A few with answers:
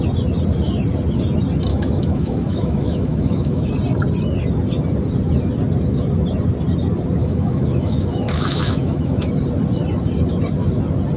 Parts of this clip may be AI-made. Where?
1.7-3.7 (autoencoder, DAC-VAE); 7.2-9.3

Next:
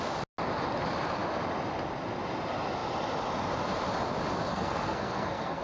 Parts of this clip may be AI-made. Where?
4.5-5.6 (codec, SNAC)

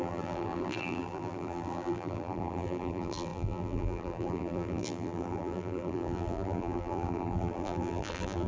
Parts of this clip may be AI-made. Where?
0.0-8.5 (vocoder, BigVGAN v2)

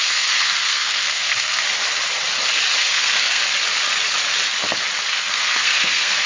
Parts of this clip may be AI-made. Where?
0.0-1.6 (codec, SNAC); 2.8-3.4; 5.1-6.3